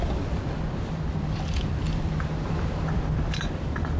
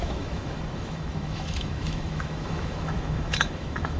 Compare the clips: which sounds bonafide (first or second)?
first